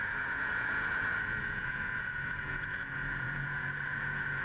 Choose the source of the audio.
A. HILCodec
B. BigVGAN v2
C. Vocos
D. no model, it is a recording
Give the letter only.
C